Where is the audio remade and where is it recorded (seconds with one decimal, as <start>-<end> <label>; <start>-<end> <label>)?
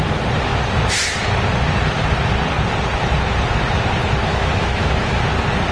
0.0-4.3 recorded; 4.3-5.2 remade; 5.2-5.7 recorded